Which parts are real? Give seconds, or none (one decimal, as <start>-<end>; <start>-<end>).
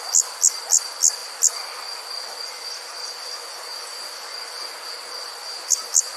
0.0-6.2